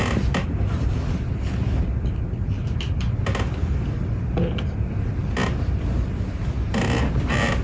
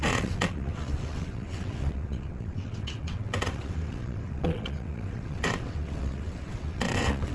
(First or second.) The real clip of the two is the first